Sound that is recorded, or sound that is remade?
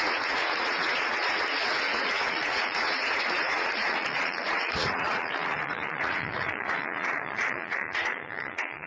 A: remade